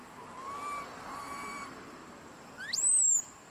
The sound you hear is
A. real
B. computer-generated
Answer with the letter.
B